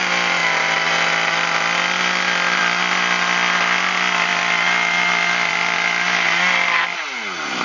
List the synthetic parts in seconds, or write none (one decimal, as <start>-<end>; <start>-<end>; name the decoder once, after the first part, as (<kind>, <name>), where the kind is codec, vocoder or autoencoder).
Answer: none